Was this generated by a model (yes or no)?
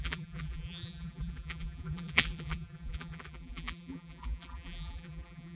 yes